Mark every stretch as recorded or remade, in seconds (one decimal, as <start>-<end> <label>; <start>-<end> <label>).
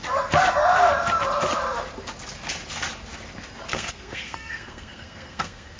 0.0-3.7 recorded; 3.7-5.8 remade